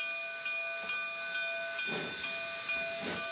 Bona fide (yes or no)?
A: yes